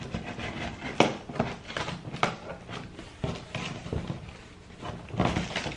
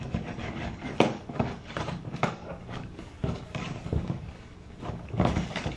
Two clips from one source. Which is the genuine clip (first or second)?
first